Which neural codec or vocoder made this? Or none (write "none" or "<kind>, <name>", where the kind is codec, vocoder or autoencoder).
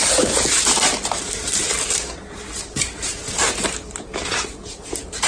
none